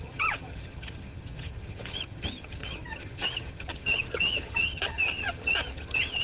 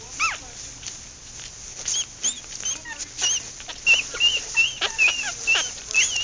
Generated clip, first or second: first